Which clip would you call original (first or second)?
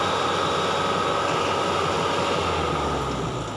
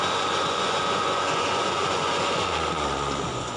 first